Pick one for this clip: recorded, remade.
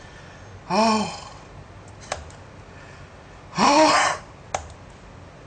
recorded